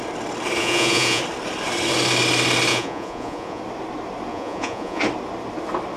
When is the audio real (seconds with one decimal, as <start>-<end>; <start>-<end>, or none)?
0.0-0.6; 1.2-2.7; 3.6-4.3; 5.0-6.0